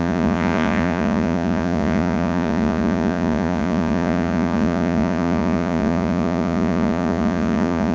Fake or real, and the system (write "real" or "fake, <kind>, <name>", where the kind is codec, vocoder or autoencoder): fake, vocoder, Vocos